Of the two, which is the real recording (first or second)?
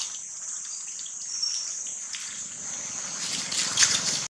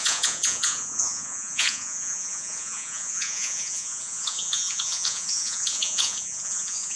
first